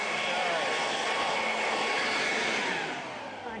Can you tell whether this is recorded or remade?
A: recorded